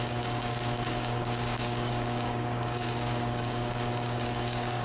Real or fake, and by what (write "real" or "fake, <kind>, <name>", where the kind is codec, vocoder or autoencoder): fake, codec, DAC